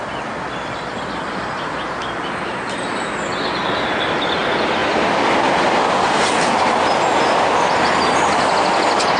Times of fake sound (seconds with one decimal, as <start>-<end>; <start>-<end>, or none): none